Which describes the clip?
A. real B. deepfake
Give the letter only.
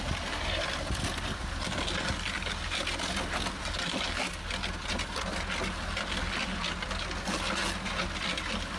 A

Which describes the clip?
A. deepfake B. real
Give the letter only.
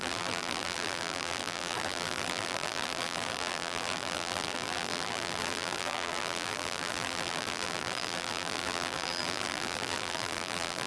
A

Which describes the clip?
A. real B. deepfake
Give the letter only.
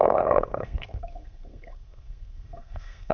B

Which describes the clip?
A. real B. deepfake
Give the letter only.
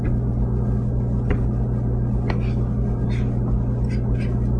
A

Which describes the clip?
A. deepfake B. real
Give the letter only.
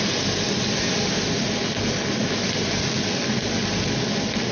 B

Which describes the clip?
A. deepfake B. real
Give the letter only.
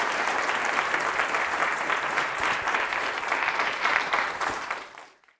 A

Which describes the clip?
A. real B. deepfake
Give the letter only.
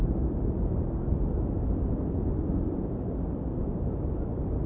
A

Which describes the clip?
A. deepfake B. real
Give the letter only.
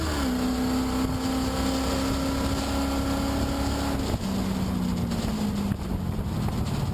B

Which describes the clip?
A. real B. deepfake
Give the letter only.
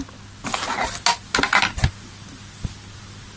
A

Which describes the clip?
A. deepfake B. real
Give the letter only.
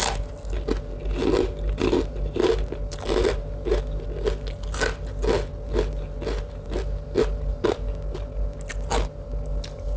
B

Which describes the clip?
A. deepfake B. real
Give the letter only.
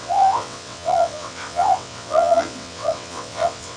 A